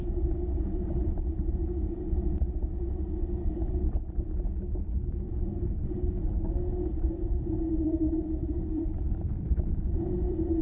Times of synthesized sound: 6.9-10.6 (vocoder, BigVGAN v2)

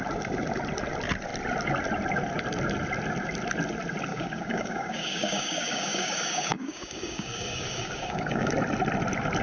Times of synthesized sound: 4.1-8.5 (codec, DAC)

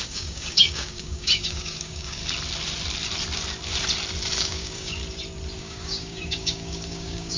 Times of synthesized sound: 0.0-2.2 (codec, DAC); 4.4-5.0; 5.6-7.4

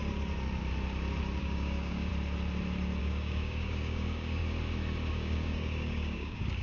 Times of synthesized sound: 1.4-2.1 (codec, DAC); 3.0-4.4; 5.1-6.6